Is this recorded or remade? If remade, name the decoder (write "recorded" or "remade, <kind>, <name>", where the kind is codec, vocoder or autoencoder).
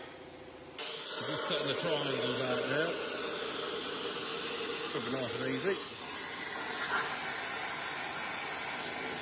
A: recorded